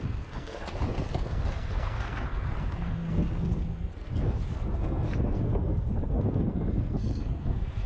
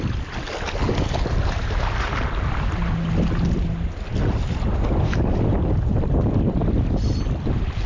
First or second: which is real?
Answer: second